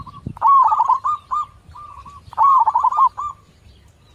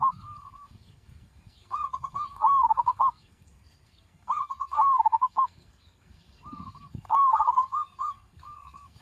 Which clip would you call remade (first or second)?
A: second